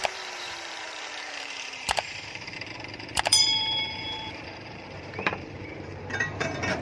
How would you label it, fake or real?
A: fake